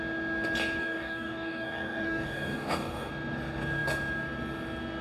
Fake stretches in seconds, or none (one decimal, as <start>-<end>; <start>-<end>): 0.8-3.1